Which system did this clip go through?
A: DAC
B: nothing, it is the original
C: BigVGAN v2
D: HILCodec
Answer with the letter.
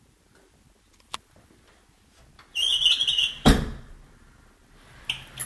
B